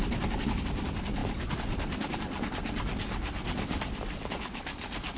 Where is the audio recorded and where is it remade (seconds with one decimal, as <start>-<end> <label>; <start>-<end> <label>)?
0.0-5.2 recorded